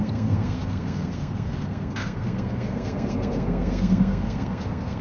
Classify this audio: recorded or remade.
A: remade